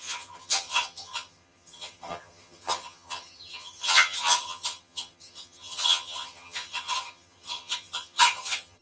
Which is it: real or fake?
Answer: fake